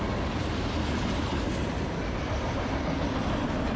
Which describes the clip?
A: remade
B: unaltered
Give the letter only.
B